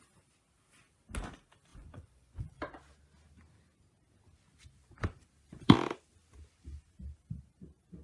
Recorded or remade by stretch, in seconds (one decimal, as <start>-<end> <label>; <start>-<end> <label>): 0.0-1.7 recorded; 1.7-2.6 remade; 2.6-8.0 recorded